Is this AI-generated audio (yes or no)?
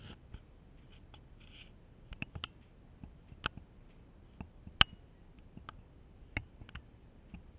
no